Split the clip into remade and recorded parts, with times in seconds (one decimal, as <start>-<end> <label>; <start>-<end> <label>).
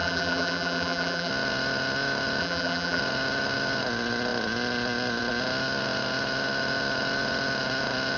0.0-1.3 remade; 1.3-2.4 recorded; 2.4-3.0 remade; 3.0-8.2 recorded